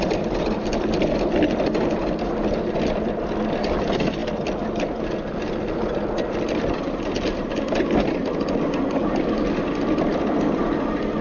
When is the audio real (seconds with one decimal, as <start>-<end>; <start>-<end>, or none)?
0.0-11.2